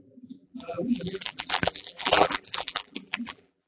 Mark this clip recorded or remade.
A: remade